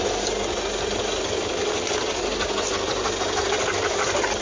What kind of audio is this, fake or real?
real